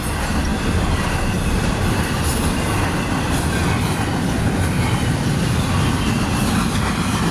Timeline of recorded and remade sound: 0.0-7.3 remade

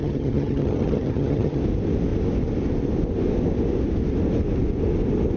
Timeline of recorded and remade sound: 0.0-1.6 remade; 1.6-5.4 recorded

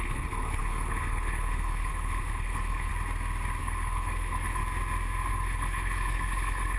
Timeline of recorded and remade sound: 0.0-2.9 remade; 2.9-3.6 recorded; 3.6-4.6 remade; 4.6-5.3 recorded; 5.3-6.8 remade

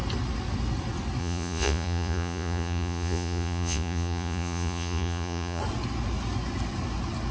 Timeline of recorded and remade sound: 0.0-1.2 recorded; 1.2-5.6 remade; 5.6-7.3 recorded

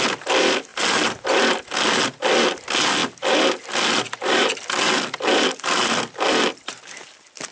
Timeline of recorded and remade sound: 0.0-7.5 recorded

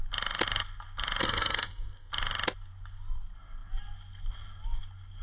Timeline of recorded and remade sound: 0.0-1.2 recorded; 1.2-2.1 remade; 2.1-5.2 recorded

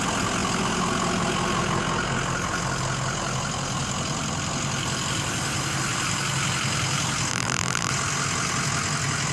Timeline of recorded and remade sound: 0.0-7.3 recorded; 7.3-7.9 remade; 7.9-9.3 recorded